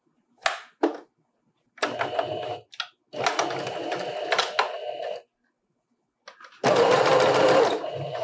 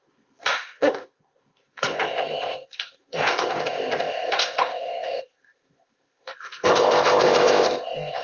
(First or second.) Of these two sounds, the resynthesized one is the second